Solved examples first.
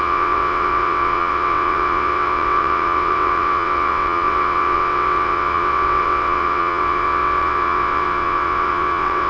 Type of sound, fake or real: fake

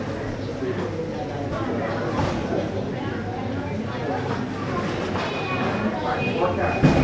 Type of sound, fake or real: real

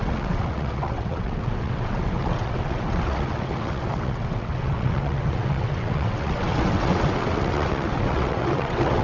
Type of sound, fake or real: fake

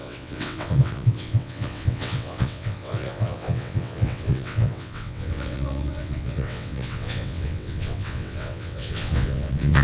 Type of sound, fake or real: fake